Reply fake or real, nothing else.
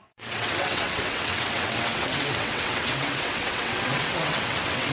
fake